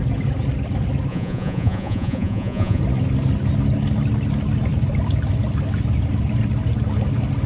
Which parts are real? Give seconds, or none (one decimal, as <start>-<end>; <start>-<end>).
0.0-1.1; 2.8-7.5